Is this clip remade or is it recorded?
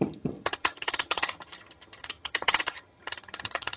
remade